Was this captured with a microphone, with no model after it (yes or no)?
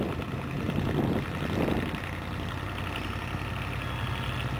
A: yes